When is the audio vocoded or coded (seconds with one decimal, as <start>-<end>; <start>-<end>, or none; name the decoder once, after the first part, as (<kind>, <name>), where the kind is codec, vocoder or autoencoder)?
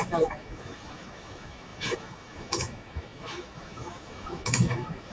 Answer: 0.0-5.1 (autoencoder, DAC-VAE)